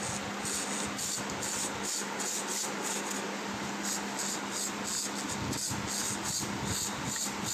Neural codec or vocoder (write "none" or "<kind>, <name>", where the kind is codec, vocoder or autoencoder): none